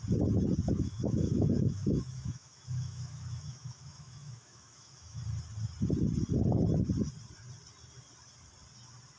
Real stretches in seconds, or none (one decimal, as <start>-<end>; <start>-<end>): 0.0-0.6; 5.2-9.2